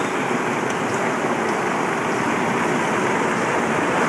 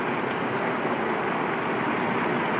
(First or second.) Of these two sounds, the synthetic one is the first